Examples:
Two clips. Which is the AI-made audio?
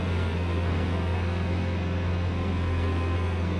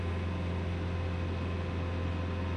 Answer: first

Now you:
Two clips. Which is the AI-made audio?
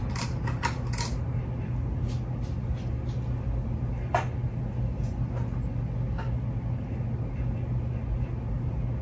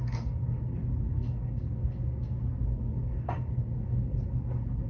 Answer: second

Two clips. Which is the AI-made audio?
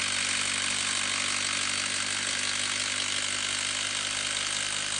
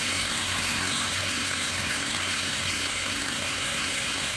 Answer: second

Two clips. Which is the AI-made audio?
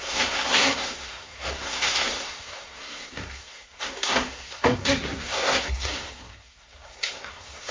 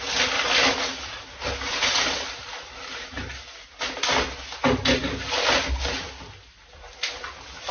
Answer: first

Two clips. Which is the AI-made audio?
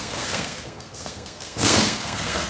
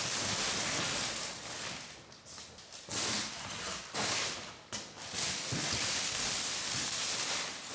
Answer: first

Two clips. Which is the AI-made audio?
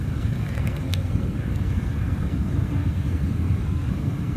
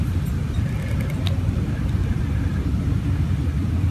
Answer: first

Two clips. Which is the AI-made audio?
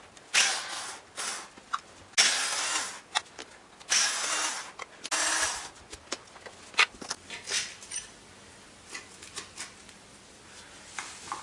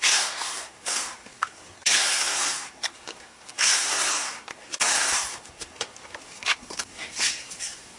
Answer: second